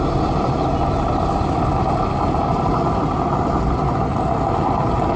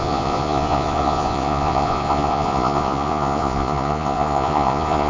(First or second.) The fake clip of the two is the second